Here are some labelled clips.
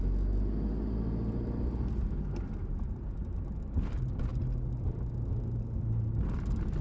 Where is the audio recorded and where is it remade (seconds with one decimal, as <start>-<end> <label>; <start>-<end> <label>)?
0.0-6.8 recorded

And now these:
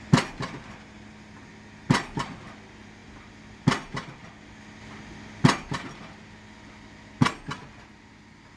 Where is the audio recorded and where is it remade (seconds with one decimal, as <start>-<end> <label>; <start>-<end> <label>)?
0.0-8.6 recorded

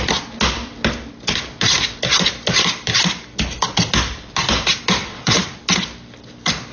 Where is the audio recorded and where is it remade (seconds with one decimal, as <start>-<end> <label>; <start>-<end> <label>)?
0.0-5.0 recorded; 5.0-5.6 remade; 5.6-6.7 recorded